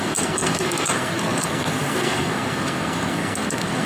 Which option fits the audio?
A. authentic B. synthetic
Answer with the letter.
B